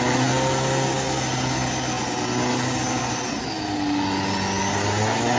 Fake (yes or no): no